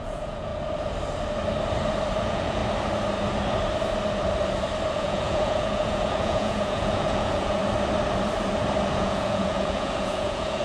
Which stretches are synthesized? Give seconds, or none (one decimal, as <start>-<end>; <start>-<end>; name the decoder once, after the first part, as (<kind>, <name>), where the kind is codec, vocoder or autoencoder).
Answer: 0.0-0.5 (vocoder, Vocos); 2.2-2.6; 4.9-7.6; 8.9-10.6